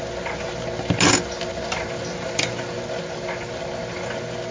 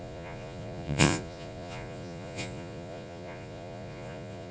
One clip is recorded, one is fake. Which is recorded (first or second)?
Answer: first